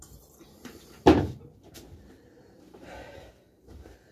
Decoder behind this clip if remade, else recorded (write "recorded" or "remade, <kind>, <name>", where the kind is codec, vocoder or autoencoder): remade, vocoder, BigVGAN v2